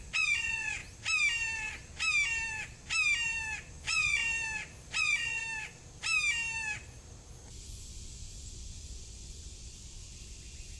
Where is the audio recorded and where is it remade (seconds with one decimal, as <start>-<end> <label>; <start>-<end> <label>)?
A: 0.0-0.8 remade; 0.8-3.7 recorded; 3.7-4.2 remade; 4.2-5.0 recorded; 5.0-5.4 remade; 5.4-7.6 recorded; 7.6-10.8 remade